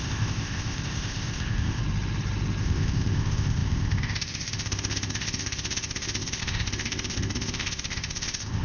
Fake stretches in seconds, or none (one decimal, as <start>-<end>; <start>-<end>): 0.0-1.8; 2.6-8.6

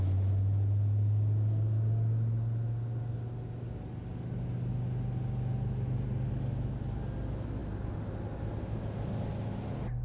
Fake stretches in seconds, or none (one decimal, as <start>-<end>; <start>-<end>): none

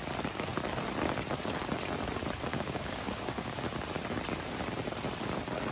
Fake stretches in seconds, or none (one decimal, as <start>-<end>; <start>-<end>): 2.5-3.6

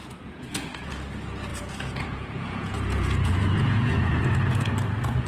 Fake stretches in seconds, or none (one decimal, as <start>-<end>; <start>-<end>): 0.0-0.9; 1.5-4.7

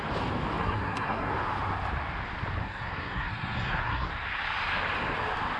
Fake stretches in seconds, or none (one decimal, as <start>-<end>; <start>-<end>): 0.6-1.3; 2.6-4.1

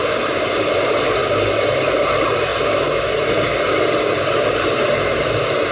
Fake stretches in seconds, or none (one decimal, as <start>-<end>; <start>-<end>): 0.0-1.2; 1.7-5.7

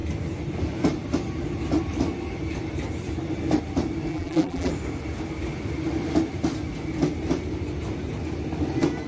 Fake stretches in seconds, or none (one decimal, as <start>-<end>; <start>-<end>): 4.1-4.7

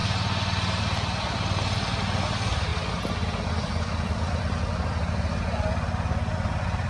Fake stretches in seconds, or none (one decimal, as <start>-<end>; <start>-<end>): none